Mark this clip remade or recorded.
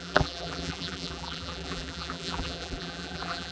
remade